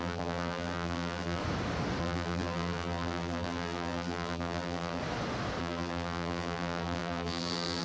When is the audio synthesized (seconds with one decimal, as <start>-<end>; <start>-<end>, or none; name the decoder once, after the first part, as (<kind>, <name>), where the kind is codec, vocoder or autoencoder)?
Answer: 0.0-1.4 (vocoder, BigVGAN v2); 2.0-5.0; 5.6-7.8